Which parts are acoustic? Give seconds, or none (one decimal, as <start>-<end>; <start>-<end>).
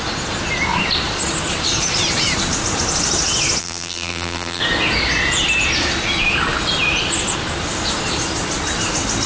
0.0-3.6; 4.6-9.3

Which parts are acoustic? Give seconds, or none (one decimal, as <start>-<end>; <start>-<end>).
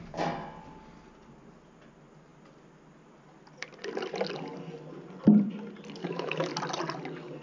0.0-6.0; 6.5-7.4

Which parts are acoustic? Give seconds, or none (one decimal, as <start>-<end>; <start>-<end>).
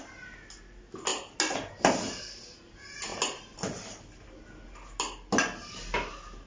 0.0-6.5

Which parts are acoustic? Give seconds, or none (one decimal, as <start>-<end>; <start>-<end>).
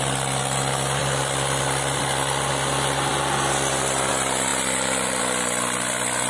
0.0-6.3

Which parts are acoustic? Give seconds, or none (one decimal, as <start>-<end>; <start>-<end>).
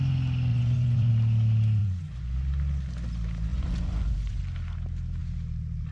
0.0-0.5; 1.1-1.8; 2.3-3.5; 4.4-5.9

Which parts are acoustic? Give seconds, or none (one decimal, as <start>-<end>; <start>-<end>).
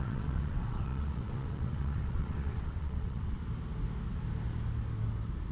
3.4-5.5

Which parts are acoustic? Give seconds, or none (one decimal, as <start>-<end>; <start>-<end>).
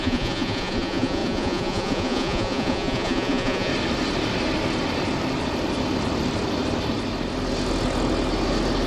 3.7-8.9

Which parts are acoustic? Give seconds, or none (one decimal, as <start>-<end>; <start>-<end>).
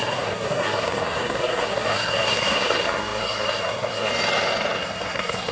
4.1-4.8